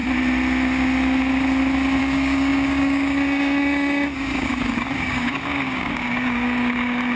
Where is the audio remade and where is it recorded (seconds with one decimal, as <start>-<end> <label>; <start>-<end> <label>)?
0.0-2.0 recorded; 2.0-7.2 remade